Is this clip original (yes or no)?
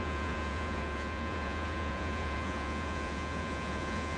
no